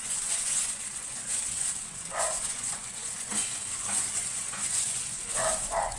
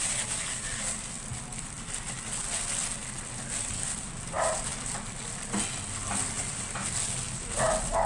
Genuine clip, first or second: second